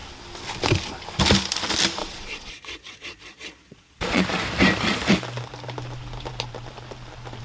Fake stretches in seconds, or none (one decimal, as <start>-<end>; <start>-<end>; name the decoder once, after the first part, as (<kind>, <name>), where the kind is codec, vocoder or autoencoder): 2.0-4.2 (vocoder, Vocos)